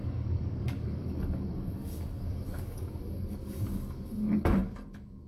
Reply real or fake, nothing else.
fake